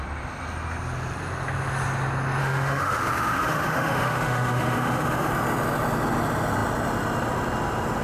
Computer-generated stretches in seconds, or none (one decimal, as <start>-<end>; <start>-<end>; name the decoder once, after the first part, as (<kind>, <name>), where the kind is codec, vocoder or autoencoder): 2.4-5.3 (autoencoder, DAC-VAE)